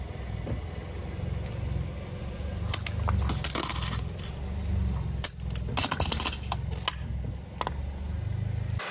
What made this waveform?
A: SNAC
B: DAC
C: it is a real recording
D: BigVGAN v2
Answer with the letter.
C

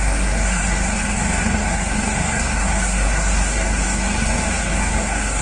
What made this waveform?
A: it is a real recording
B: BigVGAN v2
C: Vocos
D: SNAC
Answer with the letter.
D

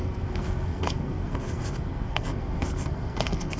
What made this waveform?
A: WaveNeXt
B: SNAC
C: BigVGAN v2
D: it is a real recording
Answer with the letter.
B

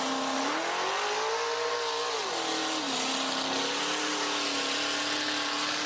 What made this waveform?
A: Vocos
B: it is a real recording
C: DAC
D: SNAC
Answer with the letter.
B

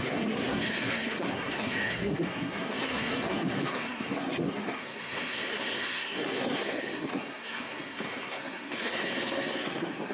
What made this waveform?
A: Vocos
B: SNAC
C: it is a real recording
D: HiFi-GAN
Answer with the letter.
B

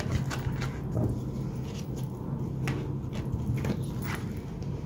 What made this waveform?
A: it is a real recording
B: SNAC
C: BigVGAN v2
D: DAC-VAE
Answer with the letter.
A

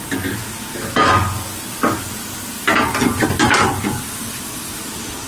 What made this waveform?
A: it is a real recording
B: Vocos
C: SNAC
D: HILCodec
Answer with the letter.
A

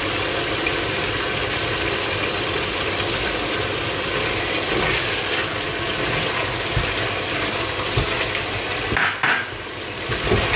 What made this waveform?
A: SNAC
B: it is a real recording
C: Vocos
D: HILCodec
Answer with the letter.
B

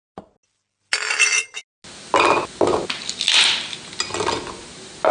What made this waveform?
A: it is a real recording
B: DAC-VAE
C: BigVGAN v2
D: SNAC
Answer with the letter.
A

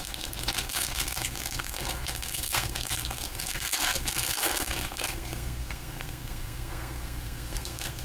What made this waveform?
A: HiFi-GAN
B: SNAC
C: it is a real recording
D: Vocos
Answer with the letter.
B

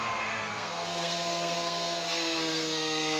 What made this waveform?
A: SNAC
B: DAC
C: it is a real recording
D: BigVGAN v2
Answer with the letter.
A